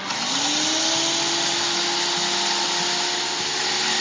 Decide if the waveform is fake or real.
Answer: real